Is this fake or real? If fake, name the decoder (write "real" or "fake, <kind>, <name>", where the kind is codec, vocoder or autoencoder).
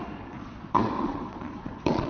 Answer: fake, vocoder, Vocos